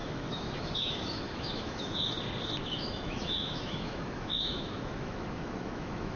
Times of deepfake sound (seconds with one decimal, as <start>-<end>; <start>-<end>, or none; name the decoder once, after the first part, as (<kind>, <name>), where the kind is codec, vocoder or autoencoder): 0.0-2.1 (autoencoder, DAC-VAE); 2.6-6.2